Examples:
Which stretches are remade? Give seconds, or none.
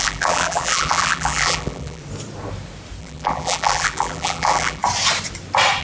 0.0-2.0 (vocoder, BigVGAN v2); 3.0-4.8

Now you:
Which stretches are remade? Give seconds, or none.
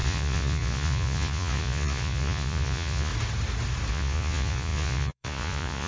0.0-3.1 (vocoder, Vocos); 3.9-5.9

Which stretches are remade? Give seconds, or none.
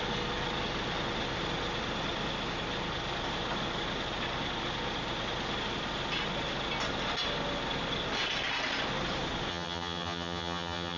9.5-11.0 (vocoder, HiFi-GAN)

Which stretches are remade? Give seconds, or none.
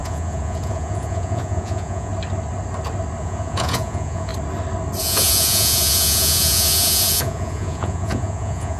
0.0-2.1 (vocoder, Vocos); 3.2-4.3; 5.0-8.8